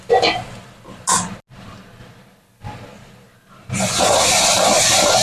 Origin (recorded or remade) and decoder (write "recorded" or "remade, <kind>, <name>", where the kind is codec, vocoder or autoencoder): recorded